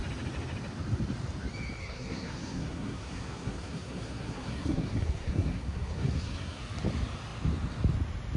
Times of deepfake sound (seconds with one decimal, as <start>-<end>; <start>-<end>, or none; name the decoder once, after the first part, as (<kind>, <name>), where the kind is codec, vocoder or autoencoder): 1.8-6.6 (codec, SNAC)